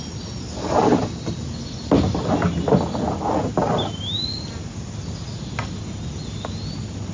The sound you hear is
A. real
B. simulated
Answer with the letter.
A